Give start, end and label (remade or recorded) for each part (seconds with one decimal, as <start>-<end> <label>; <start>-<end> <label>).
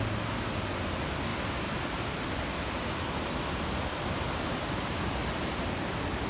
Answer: 0.0-6.3 recorded